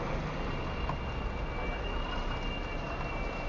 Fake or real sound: real